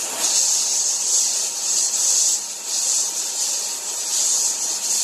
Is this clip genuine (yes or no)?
yes